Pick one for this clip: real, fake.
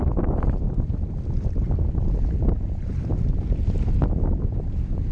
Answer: real